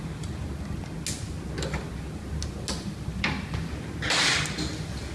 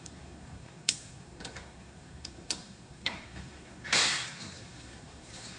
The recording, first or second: first